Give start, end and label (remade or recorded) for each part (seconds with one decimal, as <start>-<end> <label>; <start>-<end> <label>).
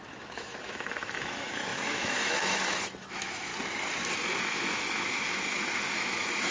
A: 0.0-3.5 remade; 3.5-4.4 recorded; 4.4-6.5 remade